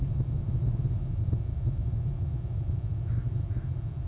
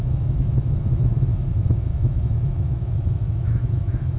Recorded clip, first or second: first